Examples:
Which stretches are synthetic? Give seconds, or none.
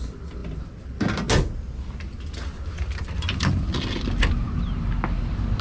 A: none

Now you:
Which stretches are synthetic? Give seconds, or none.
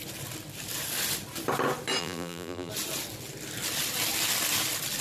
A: 2.0-2.7 (vocoder, BigVGAN v2)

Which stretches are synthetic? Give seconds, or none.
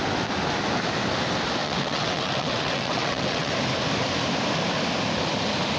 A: 1.6-3.5 (vocoder, WaveNeXt)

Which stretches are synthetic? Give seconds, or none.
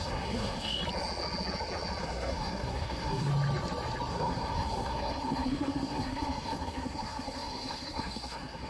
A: 0.0-0.8 (codec, SNAC); 2.0-3.3; 4.1-8.7